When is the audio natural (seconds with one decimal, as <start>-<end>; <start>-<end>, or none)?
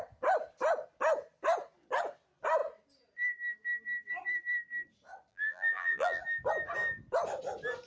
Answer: 0.0-5.3; 6.2-7.9